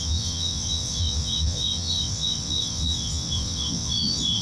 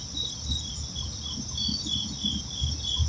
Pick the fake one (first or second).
first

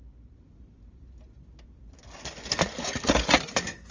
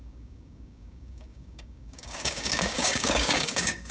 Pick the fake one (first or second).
second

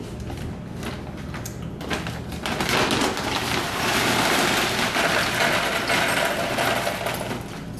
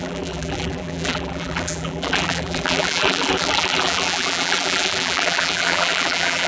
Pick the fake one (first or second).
second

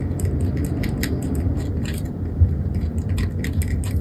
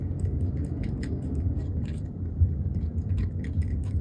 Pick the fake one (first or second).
second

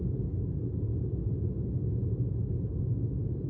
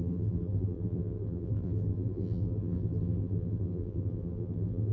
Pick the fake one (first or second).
second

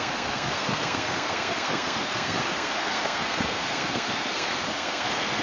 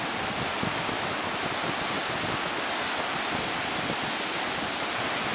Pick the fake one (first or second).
first